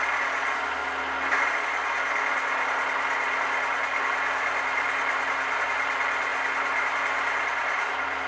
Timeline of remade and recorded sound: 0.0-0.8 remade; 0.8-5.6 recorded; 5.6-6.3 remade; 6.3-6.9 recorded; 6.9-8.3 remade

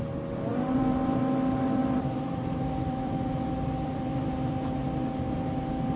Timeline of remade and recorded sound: 0.0-0.5 recorded; 0.5-1.2 remade; 1.2-1.8 recorded; 1.8-4.5 remade; 4.5-6.0 recorded

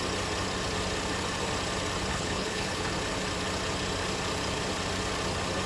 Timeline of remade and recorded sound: 0.0-2.1 recorded; 2.1-2.9 remade; 2.9-5.7 recorded